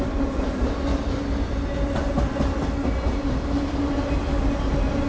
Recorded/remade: recorded